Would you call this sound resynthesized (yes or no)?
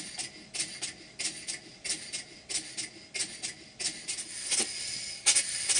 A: no